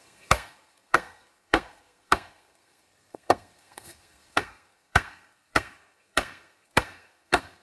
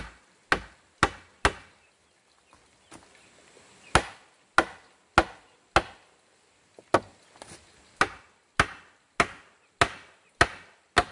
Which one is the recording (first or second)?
second